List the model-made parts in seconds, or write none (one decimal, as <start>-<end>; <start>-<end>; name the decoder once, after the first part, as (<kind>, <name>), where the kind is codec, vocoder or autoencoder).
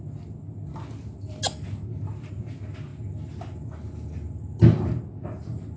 none